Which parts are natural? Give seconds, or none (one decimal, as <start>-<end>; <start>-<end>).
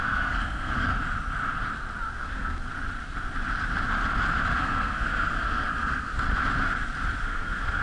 0.9-2.1; 2.7-4.6; 6.1-7.2